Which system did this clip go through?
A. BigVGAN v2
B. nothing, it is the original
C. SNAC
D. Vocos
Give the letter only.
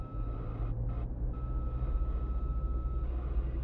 B